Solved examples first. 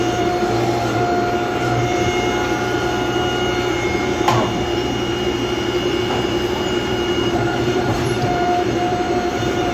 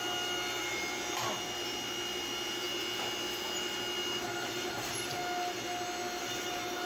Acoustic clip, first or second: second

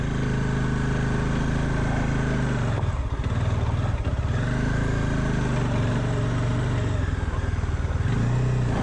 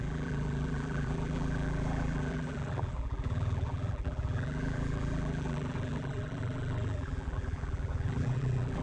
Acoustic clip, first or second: first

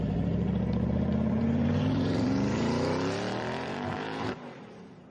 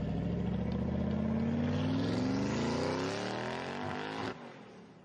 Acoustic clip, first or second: second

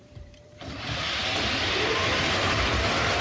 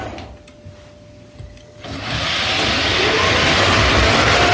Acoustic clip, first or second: second